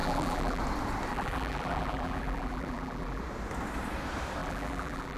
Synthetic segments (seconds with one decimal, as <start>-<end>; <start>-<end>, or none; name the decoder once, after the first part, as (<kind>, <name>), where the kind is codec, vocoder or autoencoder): 0.0-0.6 (vocoder, BigVGAN v2); 1.1-3.2; 4.4-5.2